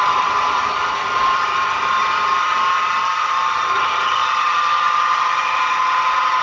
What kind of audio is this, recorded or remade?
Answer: remade